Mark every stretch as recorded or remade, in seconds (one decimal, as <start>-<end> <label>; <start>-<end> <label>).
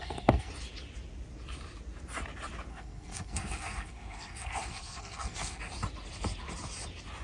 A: 0.0-0.5 remade; 0.5-2.7 recorded; 2.7-5.6 remade; 5.6-7.2 recorded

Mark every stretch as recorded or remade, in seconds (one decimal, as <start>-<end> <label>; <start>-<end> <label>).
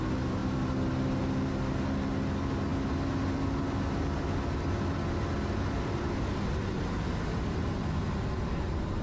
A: 0.0-9.0 recorded